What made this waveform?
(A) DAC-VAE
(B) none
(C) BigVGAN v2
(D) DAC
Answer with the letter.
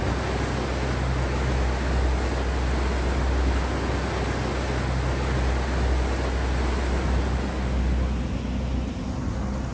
B